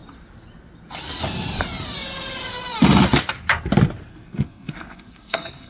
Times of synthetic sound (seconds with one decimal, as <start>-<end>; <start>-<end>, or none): 4.1-5.7

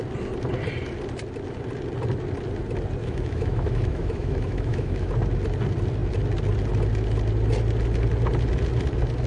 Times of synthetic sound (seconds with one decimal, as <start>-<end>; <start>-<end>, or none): 3.0-5.1

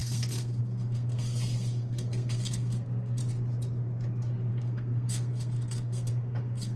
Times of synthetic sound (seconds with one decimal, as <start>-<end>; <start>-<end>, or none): 0.0-3.2; 4.5-6.8

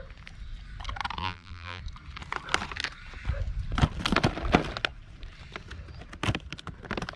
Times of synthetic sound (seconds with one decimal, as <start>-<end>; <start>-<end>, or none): 1.2-1.8

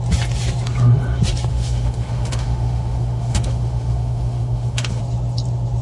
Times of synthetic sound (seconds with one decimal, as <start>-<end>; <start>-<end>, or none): 1.5-5.0

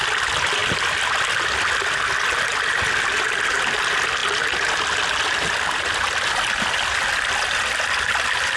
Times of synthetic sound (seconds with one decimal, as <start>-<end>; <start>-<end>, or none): none

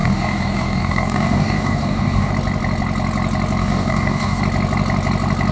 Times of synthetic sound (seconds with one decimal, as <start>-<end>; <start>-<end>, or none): 0.0-2.3; 3.6-4.4